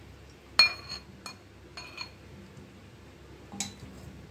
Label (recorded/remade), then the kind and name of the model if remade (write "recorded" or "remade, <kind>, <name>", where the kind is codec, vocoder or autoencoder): recorded